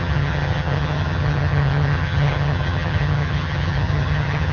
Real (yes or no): no